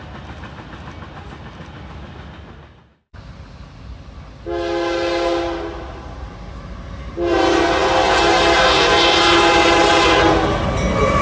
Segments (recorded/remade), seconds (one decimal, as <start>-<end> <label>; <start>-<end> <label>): 0.0-11.2 recorded